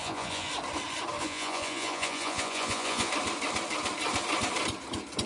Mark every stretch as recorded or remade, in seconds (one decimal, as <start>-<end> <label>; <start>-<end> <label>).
0.0-0.5 remade; 0.5-1.2 recorded; 1.2-3.1 remade; 3.1-5.3 recorded